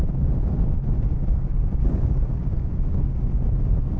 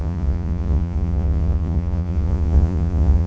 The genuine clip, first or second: first